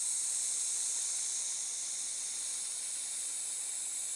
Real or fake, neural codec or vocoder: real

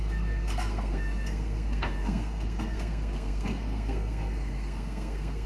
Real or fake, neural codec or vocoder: fake, codec, SNAC